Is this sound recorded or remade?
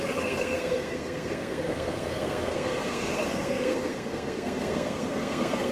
remade